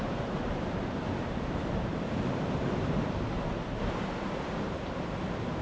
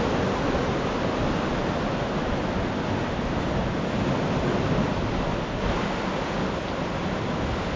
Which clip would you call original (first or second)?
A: second